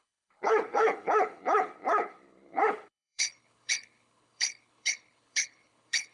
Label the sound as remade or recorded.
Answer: remade